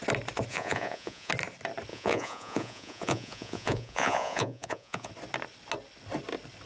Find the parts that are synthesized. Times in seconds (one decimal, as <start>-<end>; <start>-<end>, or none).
0.5-1.3; 1.9-5.1